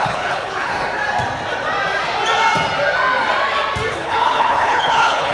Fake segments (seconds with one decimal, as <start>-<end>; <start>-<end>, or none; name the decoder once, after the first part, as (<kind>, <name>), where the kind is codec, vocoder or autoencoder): 0.0-0.7 (codec, HILCodec); 3.9-5.3